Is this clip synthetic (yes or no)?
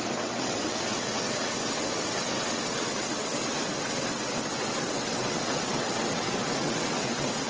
yes